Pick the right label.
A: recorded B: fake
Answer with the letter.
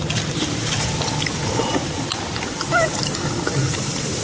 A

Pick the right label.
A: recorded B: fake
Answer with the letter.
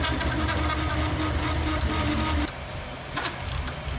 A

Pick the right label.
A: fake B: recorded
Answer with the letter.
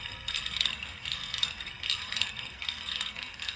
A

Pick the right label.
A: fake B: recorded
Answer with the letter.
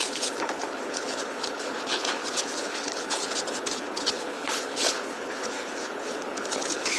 A